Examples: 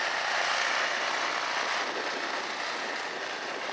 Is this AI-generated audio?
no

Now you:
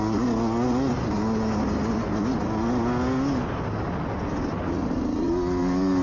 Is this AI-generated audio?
no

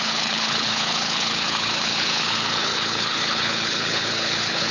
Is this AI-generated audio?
yes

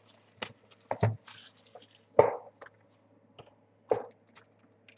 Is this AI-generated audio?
no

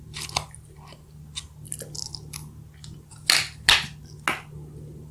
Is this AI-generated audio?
no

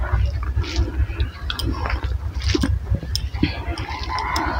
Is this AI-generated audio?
no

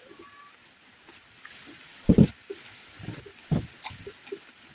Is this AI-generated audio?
no